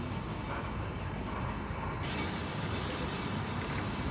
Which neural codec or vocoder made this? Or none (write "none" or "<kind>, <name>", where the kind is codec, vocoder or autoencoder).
none